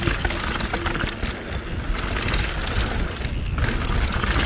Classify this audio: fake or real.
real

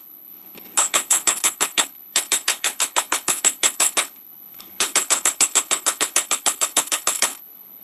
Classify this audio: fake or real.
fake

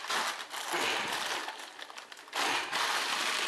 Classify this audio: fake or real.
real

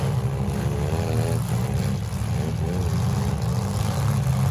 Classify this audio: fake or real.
real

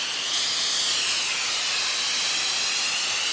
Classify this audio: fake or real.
real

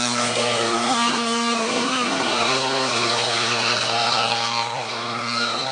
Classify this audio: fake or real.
fake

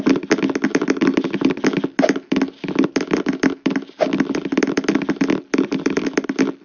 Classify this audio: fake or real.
real